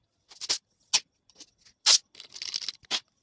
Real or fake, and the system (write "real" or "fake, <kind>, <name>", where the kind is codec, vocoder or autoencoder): real